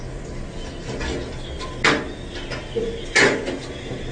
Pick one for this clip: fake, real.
real